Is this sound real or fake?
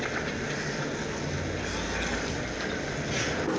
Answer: fake